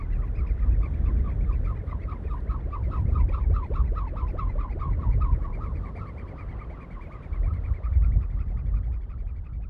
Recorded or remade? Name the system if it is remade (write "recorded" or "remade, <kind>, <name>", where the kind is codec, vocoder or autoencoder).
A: recorded